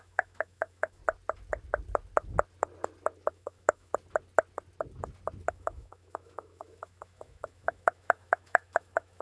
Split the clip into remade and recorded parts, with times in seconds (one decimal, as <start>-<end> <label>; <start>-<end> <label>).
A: 0.0-1.0 remade; 1.0-3.3 recorded; 3.3-3.9 remade; 3.9-5.5 recorded; 5.5-9.2 remade